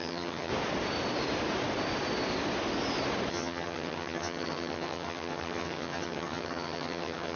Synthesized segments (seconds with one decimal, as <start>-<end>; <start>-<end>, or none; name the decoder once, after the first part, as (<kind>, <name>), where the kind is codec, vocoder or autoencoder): 0.0-0.5 (vocoder, HiFi-GAN); 3.3-7.4